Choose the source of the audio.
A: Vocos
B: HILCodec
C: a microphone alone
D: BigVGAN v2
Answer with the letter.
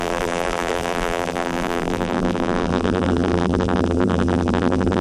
D